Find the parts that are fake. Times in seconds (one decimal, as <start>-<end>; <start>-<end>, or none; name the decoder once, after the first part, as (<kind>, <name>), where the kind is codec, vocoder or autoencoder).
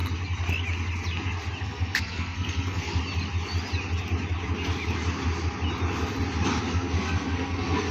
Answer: 1.6-3.0 (codec, SNAC); 6.6-7.9